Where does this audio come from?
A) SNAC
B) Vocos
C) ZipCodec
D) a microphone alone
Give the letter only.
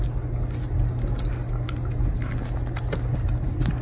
D